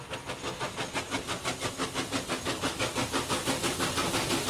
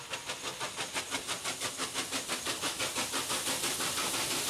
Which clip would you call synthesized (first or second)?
second